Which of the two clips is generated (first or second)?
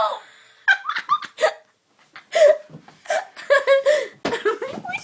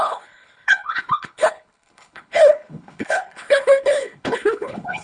second